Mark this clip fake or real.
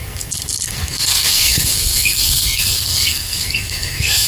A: fake